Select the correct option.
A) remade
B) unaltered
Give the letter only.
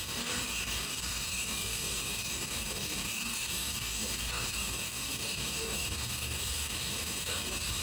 A